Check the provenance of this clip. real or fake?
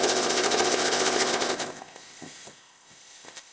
fake